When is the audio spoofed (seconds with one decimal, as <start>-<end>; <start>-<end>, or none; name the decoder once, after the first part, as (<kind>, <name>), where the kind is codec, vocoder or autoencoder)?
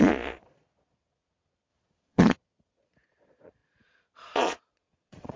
0.0-5.4 (vocoder, Vocos)